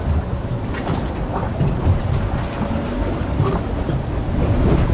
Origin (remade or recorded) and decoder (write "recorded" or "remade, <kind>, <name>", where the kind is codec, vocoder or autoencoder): recorded